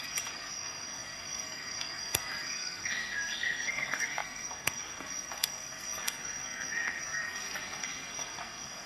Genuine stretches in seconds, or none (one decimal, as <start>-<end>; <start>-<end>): none